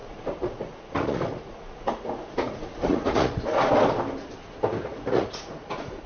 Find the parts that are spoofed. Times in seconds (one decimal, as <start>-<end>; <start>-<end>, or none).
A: 0.0-3.7; 4.9-6.1